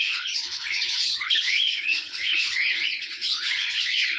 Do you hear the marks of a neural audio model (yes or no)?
yes